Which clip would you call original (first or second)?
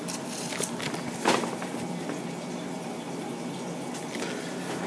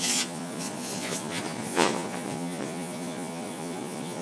first